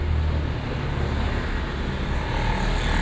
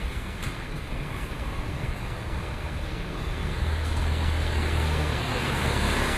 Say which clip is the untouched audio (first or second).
first